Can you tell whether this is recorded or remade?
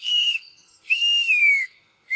remade